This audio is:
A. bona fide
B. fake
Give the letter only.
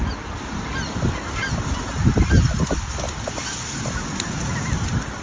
A